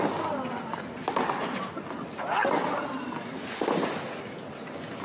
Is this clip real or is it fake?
real